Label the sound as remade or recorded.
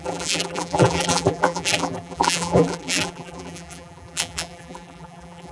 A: remade